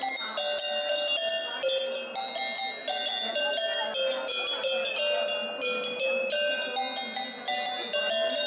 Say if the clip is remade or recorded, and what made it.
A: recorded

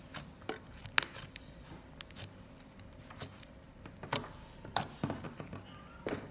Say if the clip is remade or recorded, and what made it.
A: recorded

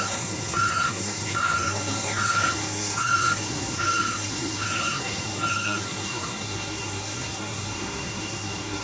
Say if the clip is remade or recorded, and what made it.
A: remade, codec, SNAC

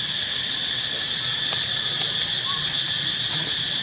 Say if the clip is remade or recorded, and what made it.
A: recorded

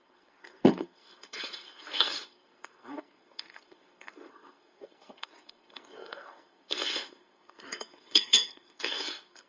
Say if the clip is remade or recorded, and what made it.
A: remade, codec, SNAC